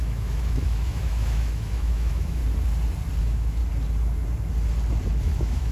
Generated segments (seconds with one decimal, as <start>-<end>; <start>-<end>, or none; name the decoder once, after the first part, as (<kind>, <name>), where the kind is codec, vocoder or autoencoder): 0.0-2.4 (autoencoder, DAC-VAE); 3.2-3.6; 5.2-5.7